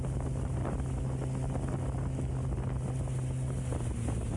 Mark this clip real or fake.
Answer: real